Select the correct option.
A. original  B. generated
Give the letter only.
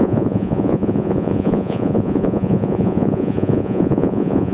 B